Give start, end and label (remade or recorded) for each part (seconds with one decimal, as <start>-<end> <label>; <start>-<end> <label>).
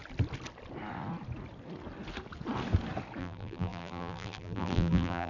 0.0-3.2 recorded; 3.2-5.3 remade